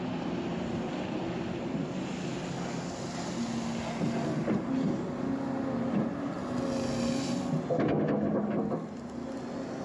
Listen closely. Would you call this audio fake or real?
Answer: real